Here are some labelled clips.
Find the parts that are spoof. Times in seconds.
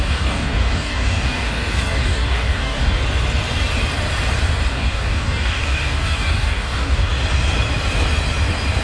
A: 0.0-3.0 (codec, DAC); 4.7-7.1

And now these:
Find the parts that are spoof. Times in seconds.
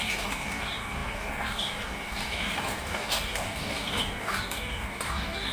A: 0.0-5.5 (codec, DAC)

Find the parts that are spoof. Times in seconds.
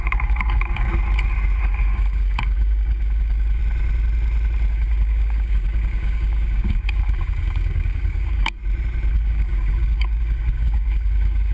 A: 0.0-0.9 (codec, DAC); 1.6-3.6; 4.7-8.6; 9.1-11.5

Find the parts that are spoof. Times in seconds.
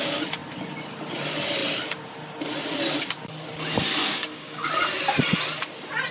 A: 4.0-4.6 (codec, DAC)